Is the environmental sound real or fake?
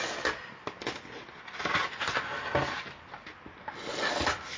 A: real